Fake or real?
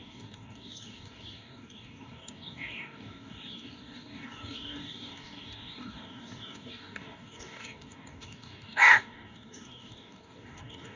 fake